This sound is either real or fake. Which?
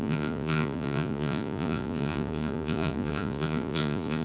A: fake